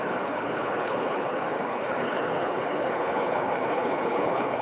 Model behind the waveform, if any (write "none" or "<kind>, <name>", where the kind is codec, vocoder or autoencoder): codec, HILCodec